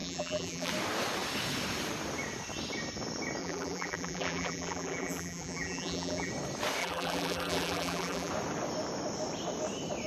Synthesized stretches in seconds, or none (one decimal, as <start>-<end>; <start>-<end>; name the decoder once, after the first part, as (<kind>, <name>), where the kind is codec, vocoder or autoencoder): 0.0-0.7 (vocoder, BigVGAN v2); 3.4-6.3; 6.8-8.3